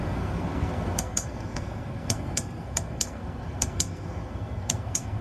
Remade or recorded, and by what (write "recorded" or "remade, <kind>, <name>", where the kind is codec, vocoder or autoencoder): remade, codec, SNAC